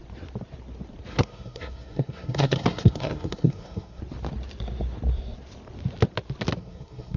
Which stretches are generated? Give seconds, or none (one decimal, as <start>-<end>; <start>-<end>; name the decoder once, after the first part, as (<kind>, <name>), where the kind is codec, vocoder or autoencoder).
1.1-4.0 (codec, SNAC); 6.6-7.2